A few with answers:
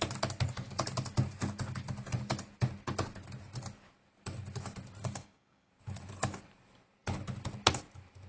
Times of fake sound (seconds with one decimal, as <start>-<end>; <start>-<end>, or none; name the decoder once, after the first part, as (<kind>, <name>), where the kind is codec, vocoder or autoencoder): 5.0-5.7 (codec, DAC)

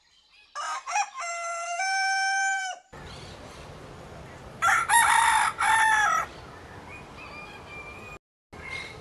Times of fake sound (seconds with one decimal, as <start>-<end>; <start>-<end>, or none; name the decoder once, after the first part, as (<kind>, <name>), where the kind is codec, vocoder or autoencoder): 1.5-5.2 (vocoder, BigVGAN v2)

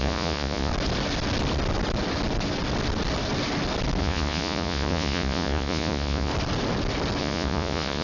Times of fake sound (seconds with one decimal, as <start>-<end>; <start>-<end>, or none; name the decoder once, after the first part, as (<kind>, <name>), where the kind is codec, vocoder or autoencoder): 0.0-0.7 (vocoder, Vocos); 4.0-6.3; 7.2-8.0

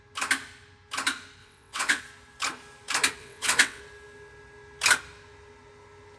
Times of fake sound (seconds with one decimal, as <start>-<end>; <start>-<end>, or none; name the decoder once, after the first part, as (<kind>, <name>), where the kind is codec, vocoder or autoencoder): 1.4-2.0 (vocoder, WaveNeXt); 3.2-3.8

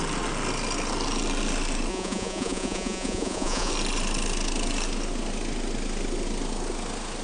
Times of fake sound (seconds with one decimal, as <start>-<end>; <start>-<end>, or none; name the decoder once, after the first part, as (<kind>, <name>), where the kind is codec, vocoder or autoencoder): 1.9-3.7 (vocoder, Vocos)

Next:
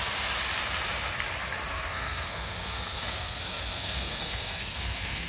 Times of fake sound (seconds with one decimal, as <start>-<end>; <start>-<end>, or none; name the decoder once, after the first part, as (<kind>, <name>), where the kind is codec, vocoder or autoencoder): 1.7-5.3 (codec, SNAC)

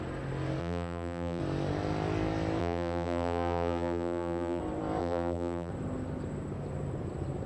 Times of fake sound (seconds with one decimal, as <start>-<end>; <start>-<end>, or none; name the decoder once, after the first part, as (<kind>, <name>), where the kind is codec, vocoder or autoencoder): 0.6-1.4 (vocoder, BigVGAN v2); 2.6-4.6; 5.0-5.7